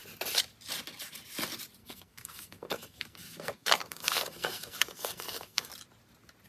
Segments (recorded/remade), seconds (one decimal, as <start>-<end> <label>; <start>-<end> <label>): 0.0-1.8 recorded; 1.8-5.7 remade; 5.7-6.5 recorded